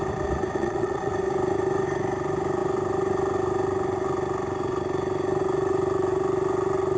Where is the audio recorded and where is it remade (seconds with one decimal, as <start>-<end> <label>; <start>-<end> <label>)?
0.0-0.6 recorded; 0.6-1.1 remade; 1.1-7.0 recorded